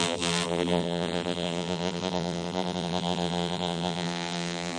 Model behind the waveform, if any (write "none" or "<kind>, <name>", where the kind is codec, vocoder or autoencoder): vocoder, BigVGAN v2